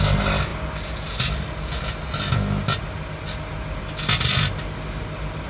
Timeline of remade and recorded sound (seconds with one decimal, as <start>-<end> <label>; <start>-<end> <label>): 0.0-5.5 recorded